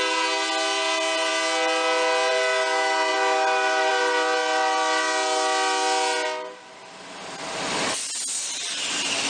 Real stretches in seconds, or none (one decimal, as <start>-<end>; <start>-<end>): 0.0-9.3